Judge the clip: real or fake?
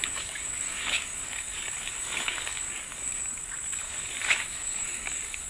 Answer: fake